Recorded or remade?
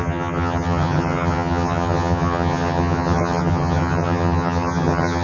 remade